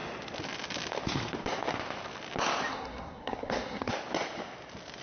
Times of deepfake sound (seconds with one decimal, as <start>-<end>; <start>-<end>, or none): 2.7-3.9